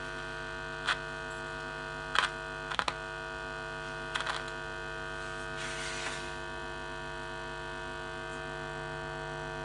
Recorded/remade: recorded